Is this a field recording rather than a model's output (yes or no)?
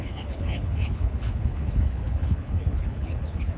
no